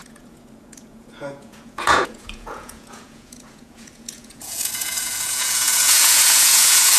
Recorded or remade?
remade